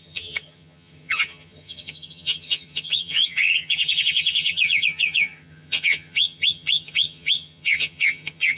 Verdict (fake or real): fake